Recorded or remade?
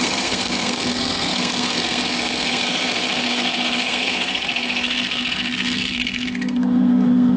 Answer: remade